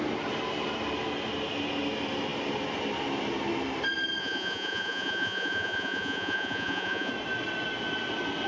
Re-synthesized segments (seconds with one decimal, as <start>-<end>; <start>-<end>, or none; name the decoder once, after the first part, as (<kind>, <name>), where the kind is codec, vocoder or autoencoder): 4.2-7.1 (vocoder, Vocos)